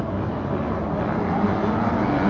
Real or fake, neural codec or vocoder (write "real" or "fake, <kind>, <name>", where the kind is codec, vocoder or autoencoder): real